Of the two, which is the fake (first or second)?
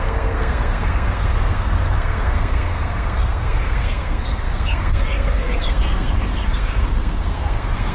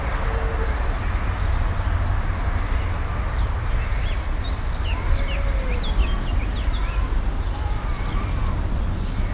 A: first